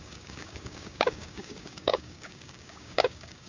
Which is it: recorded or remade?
remade